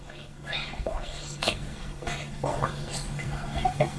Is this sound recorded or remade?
remade